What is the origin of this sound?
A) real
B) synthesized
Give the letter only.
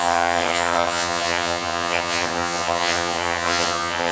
B